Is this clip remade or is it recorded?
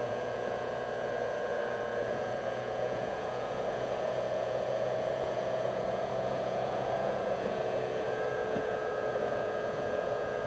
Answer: remade